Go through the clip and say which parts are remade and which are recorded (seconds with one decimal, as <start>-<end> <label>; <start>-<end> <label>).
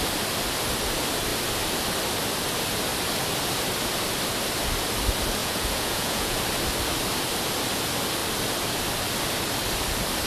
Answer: 0.0-5.4 recorded; 5.4-6.4 remade; 6.4-10.3 recorded